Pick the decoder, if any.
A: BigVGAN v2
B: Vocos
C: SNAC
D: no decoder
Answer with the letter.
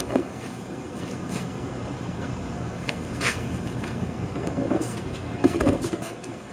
C